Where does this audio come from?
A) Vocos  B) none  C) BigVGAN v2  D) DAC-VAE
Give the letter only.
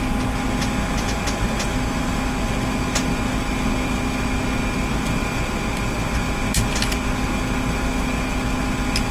B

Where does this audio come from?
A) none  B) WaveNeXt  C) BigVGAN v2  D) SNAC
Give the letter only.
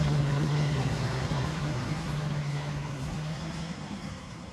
D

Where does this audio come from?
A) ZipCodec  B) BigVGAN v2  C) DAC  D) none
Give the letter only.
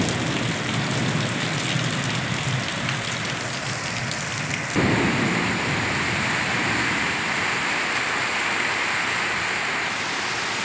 D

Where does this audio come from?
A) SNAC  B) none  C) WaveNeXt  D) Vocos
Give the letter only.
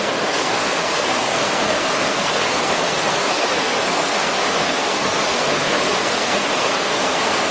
A